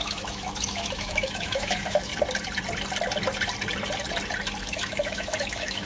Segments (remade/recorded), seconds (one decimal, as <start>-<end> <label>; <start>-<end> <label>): 0.0-2.1 remade; 2.1-4.6 recorded; 4.6-5.9 remade